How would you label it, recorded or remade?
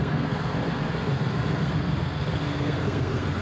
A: remade